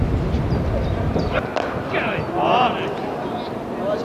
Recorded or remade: recorded